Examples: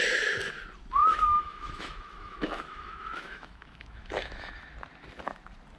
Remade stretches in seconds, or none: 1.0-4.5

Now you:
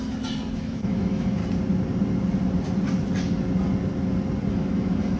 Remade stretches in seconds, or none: 0.6-1.4; 4.5-5.2

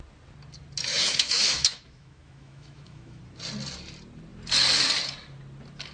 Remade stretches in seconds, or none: 0.9-3.2

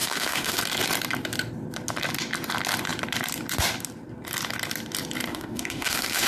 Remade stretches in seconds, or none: 0.0-0.6; 5.3-6.3

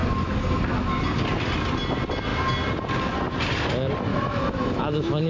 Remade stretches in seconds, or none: 4.1-5.3

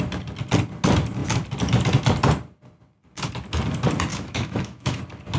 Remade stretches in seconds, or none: 4.1-5.0

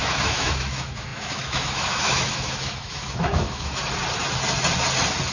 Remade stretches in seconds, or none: 0.0-3.8

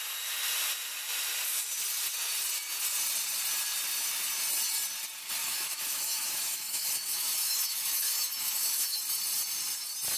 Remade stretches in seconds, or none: 5.4-9.0